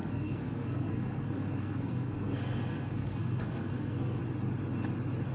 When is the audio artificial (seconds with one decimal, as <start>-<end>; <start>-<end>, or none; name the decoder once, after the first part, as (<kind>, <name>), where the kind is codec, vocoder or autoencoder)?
0.0-4.2 (codec, SNAC)